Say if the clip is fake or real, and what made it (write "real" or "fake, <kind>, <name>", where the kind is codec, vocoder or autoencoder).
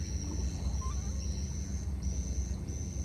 real